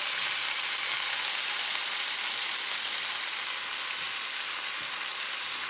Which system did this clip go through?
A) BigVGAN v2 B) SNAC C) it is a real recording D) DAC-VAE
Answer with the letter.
C